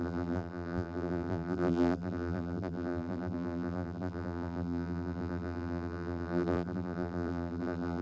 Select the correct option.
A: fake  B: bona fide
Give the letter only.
A